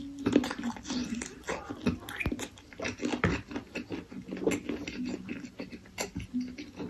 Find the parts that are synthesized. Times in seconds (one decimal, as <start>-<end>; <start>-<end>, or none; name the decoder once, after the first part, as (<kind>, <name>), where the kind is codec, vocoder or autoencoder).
none